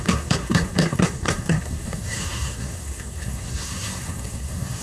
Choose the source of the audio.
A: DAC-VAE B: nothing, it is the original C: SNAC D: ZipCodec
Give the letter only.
C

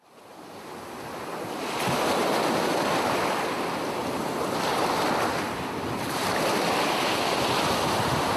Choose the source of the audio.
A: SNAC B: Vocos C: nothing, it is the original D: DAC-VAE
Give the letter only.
C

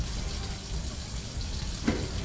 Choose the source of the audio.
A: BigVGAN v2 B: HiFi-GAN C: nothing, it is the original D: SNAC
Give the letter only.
C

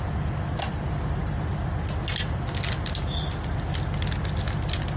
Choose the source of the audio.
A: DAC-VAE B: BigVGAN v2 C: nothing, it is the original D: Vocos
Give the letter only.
C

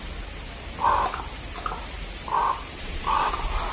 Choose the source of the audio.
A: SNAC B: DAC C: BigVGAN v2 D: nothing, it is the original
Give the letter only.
D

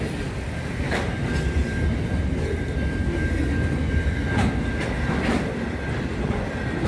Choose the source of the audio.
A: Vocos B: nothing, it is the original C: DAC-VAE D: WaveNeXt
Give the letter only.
B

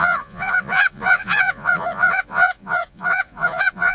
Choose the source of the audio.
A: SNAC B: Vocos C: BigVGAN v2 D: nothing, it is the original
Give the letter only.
B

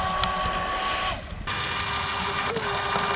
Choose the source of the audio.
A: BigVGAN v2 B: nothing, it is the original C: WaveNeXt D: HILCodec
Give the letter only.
B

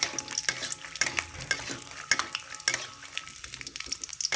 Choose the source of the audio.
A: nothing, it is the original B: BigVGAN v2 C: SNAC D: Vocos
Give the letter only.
A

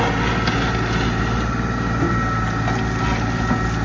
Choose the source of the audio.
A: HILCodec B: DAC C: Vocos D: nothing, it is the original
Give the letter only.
D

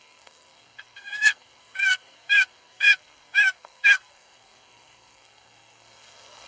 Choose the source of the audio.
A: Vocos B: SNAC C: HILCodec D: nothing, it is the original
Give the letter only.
B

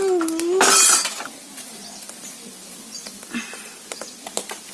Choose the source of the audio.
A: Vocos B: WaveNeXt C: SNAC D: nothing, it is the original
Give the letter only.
D